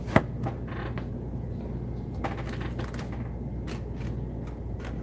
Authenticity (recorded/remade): recorded